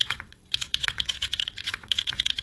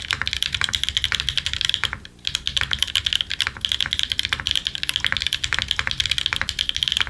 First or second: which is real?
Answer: second